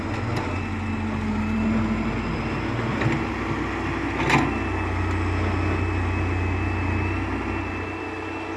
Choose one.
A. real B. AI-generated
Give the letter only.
A